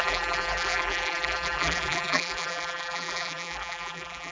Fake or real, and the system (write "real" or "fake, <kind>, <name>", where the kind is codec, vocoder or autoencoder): fake, vocoder, BigVGAN v2